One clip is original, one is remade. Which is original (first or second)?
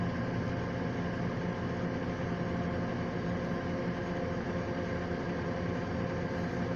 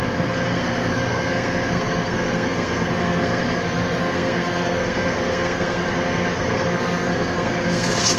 first